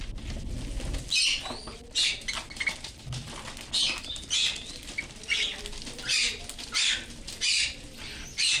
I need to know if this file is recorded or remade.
recorded